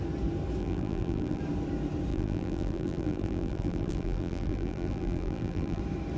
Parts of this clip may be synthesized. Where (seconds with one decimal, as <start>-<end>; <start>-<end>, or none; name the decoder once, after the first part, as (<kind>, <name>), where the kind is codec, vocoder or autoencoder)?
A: 0.6-1.4 (vocoder, BigVGAN v2); 2.1-5.8